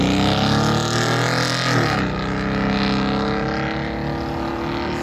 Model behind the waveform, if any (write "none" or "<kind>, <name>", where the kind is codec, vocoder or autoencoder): none